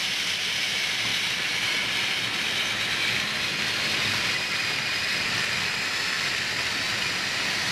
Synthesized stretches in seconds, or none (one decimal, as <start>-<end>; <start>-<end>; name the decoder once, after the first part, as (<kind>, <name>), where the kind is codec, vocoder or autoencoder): none